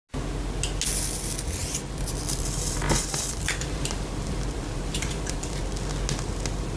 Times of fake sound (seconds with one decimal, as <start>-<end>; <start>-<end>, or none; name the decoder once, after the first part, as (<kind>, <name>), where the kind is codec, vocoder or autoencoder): 1.6-5.6 (vocoder, BigVGAN v2)